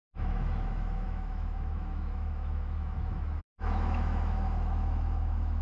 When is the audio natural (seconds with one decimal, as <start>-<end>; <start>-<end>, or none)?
none